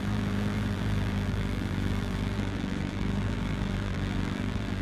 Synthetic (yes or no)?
yes